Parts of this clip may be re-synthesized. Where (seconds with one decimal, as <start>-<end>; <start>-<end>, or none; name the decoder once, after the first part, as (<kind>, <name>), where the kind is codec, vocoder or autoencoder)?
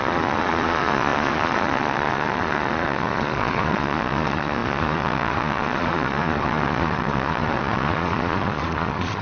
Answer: 0.0-9.2 (vocoder, Vocos)